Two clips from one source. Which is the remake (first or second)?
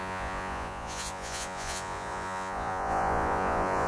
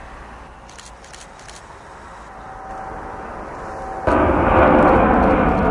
first